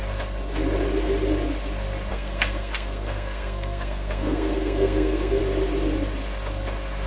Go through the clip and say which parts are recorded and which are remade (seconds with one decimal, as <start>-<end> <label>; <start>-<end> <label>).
0.0-2.1 recorded; 2.1-5.4 remade; 5.4-7.1 recorded